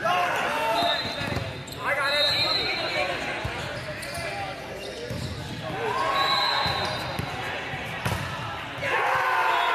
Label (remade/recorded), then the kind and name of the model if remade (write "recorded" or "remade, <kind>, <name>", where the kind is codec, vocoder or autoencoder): recorded